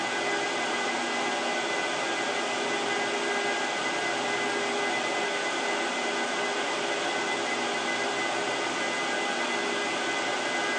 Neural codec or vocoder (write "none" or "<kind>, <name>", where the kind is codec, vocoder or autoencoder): none